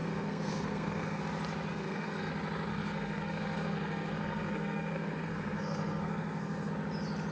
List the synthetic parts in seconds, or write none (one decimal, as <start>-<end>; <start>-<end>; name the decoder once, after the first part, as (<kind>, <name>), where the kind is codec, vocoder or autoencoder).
0.0-1.2 (codec, SNAC); 1.7-2.3; 2.7-6.7